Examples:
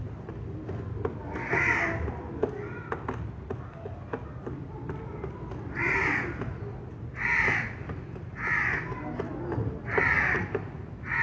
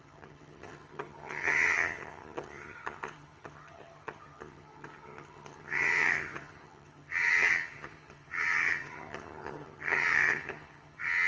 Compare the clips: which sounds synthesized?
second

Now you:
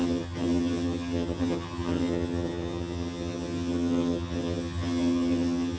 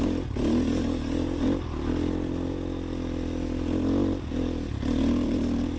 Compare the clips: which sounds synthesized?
first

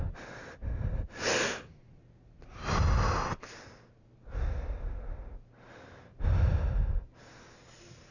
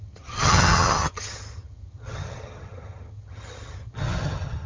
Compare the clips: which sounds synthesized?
second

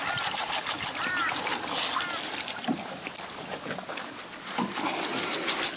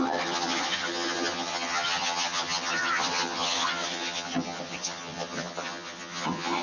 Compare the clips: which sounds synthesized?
second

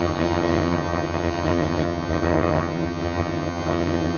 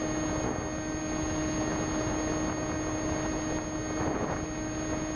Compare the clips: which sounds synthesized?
first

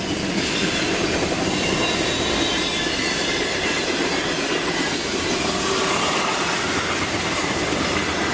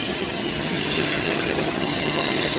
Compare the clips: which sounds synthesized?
second